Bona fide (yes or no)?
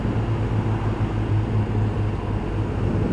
yes